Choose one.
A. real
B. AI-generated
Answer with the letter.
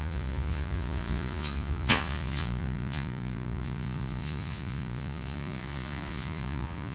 B